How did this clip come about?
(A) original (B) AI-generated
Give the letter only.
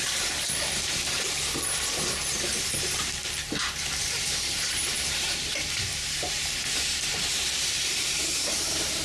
B